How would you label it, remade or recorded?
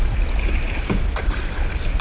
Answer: recorded